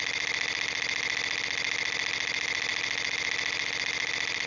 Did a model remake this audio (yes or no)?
no